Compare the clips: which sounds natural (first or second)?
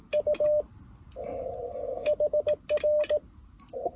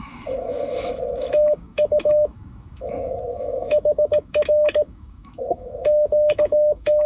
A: first